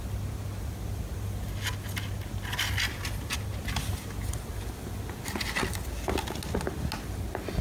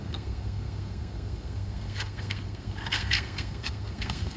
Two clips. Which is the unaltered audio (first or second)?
first